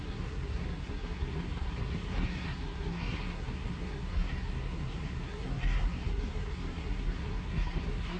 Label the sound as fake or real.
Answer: fake